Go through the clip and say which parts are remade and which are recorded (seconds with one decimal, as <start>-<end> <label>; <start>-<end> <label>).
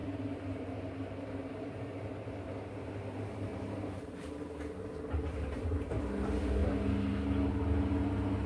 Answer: 0.0-2.5 remade; 2.5-3.5 recorded; 3.5-4.3 remade; 4.3-8.5 recorded